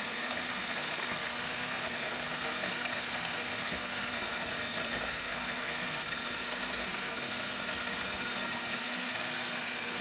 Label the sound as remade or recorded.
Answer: remade